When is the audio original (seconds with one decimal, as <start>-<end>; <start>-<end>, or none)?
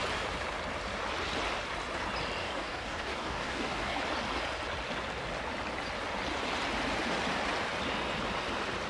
0.0-2.4; 4.0-8.9